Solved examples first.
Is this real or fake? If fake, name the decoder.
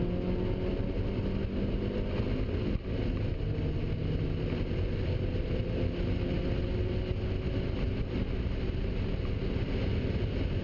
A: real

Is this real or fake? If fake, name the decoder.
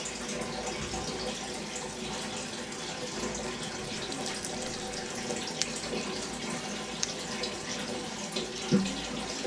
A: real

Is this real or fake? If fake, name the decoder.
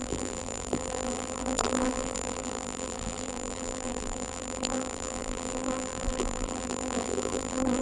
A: fake, vocoder, BigVGAN v2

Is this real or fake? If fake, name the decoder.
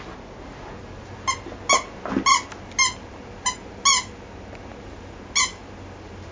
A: real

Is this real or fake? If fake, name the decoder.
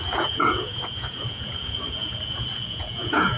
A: fake, vocoder, Vocos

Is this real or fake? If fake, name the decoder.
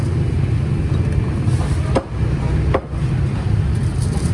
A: real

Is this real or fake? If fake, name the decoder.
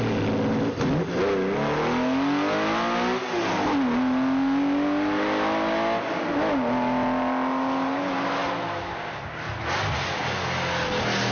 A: real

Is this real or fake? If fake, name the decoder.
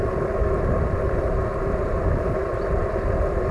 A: real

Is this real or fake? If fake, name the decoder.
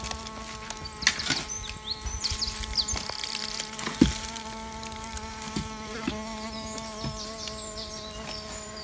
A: real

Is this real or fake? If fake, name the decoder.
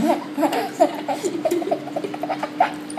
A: real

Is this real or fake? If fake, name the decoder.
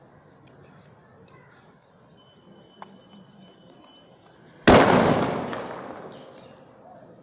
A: real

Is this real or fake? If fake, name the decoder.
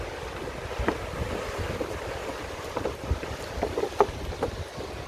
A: fake, vocoder, BigVGAN v2